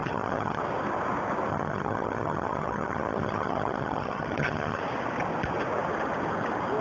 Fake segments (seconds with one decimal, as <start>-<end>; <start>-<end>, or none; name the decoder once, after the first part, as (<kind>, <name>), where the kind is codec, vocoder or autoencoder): 0.0-0.6 (vocoder, HiFi-GAN); 1.5-4.8